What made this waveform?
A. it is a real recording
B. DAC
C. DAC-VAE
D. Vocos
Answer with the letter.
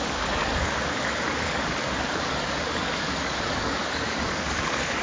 B